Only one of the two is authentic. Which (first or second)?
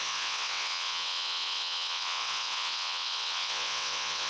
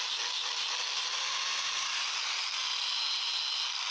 second